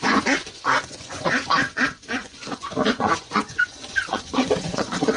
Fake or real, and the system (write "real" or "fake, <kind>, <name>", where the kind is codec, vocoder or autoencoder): fake, vocoder, Vocos